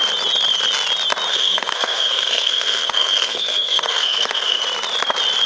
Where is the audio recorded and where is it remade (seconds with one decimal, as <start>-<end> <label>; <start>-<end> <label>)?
0.0-1.3 recorded; 1.3-4.6 remade; 4.6-5.5 recorded

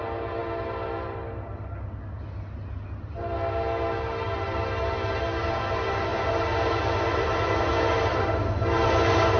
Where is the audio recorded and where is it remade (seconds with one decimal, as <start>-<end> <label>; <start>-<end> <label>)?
0.0-9.4 recorded